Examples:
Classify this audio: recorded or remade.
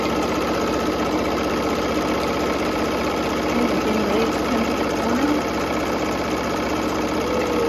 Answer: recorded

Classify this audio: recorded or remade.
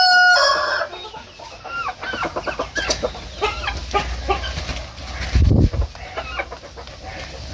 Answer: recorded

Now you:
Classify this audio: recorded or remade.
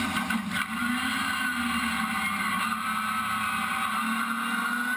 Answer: recorded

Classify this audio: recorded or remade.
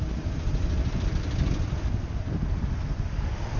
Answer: recorded